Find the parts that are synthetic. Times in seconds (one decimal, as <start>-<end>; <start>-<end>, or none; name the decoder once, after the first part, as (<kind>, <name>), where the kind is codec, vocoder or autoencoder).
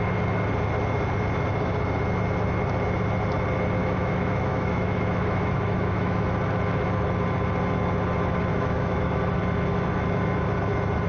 3.8-6.2 (autoencoder, DAC-VAE); 8.5-9.2